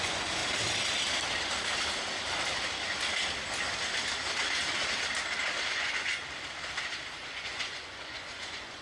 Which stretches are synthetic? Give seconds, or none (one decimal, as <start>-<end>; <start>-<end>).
0.0-0.4; 5.6-6.2; 7.2-8.8